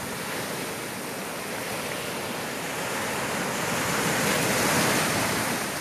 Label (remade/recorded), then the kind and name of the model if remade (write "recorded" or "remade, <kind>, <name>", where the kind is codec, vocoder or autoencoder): recorded